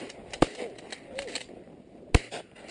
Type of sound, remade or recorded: recorded